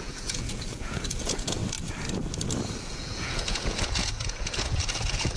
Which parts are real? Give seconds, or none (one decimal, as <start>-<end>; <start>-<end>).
1.6-2.8